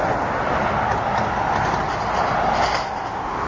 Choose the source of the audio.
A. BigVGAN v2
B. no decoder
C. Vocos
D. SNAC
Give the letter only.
B